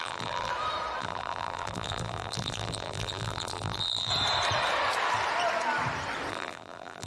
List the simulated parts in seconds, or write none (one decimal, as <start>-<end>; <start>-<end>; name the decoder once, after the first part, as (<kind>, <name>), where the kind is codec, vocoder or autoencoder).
0.0-0.5 (vocoder, BigVGAN v2); 1.0-4.1; 6.3-7.1